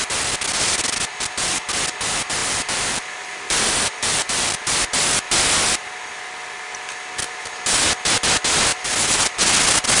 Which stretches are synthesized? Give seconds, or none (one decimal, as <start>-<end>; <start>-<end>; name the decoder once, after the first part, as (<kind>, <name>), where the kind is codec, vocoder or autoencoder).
2.4-4.8 (vocoder, BigVGAN v2); 8.7-9.4